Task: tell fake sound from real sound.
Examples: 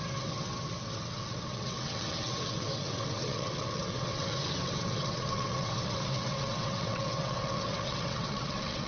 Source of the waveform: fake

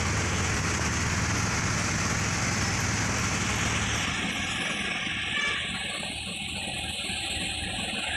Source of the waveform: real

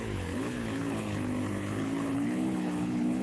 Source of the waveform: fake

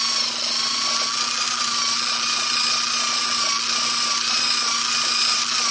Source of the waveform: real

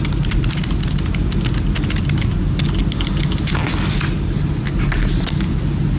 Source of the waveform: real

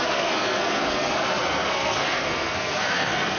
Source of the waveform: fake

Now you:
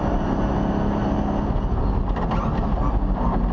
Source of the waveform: real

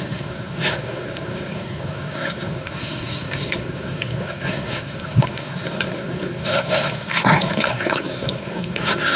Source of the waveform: fake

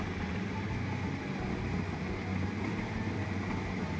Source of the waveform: real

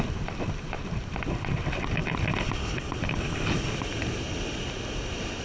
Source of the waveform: real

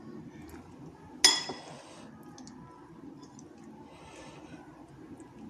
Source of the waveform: real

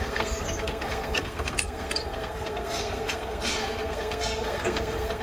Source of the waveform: fake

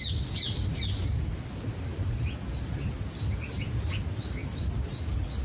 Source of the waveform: real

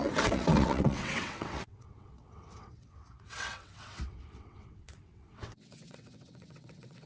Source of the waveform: fake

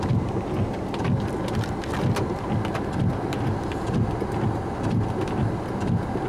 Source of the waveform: real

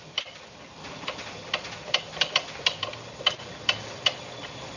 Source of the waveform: real